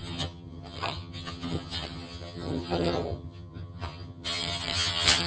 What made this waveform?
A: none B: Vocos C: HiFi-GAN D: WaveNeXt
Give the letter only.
C